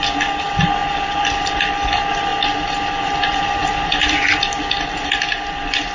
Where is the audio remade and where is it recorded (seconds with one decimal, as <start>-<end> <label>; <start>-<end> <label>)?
0.0-0.8 recorded; 0.8-1.5 remade; 1.5-2.3 recorded; 2.3-3.1 remade; 3.1-3.6 recorded; 3.6-4.2 remade; 4.2-5.9 recorded